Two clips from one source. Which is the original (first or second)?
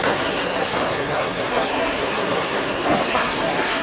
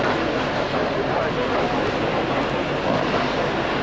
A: second